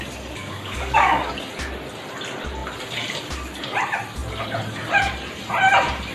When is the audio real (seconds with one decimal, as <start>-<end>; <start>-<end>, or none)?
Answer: 0.0-0.4; 1.3-6.1